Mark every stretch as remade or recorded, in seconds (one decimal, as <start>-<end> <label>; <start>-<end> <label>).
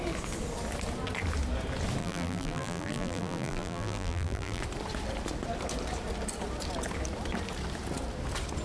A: 0.0-2.0 recorded; 2.0-4.6 remade; 4.6-8.6 recorded